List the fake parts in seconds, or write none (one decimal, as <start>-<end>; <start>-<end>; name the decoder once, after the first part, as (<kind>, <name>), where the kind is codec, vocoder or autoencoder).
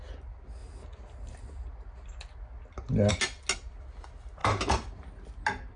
none